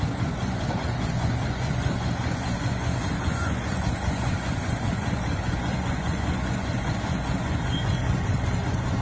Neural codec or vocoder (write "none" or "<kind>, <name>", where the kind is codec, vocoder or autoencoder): vocoder, Vocos